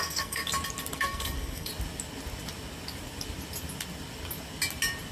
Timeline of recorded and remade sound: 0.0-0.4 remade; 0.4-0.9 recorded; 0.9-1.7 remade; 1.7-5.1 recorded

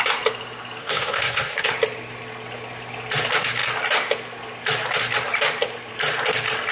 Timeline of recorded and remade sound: 0.0-0.8 recorded; 0.8-1.7 remade; 1.7-6.7 recorded

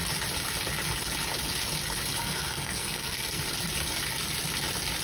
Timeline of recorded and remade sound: 0.0-2.2 recorded; 2.2-3.4 remade; 3.4-5.0 recorded

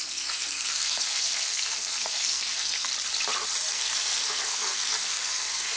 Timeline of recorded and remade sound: 0.0-2.9 remade; 2.9-3.7 recorded; 3.7-5.8 remade

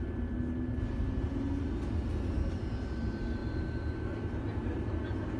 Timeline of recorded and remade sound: 0.0-5.4 recorded